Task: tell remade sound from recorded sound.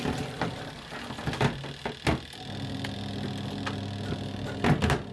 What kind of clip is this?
recorded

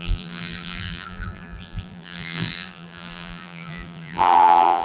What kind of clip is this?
remade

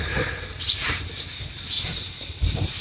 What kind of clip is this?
remade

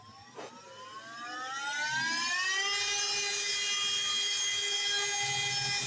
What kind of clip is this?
recorded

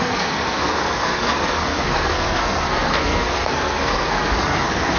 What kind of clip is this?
remade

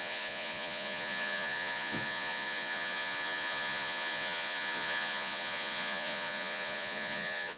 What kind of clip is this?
remade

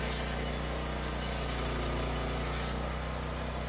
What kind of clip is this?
recorded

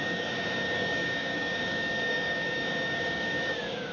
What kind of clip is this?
remade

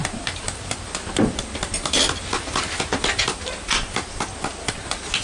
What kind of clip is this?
recorded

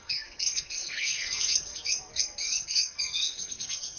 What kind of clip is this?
remade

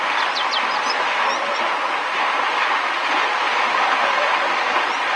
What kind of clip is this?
recorded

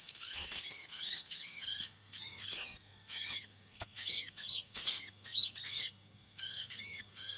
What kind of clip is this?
remade